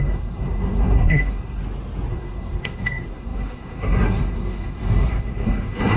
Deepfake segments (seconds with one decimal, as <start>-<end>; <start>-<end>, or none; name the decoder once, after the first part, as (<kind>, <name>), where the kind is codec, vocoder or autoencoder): 0.0-1.6 (codec, SNAC); 2.1-6.0